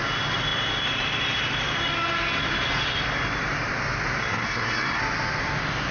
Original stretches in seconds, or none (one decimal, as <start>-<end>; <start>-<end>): 0.0-4.2; 5.0-5.9